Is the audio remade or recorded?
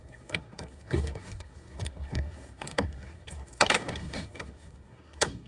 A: remade